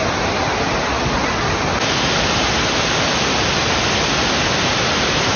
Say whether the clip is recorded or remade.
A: recorded